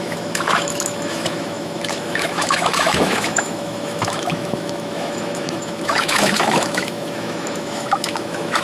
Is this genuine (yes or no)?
no